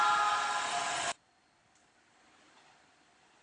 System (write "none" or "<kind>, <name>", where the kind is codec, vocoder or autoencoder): none